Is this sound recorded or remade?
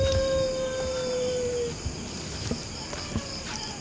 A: recorded